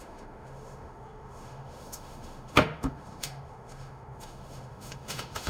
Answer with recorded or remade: remade